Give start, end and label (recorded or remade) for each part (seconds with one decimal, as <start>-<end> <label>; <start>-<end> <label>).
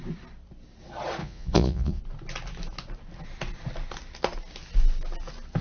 0.0-1.2 recorded; 1.2-2.0 remade; 2.0-5.6 recorded